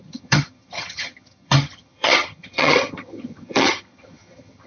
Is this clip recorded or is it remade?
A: remade